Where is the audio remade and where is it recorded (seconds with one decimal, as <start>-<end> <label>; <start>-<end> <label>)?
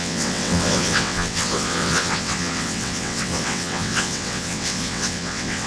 0.0-5.7 remade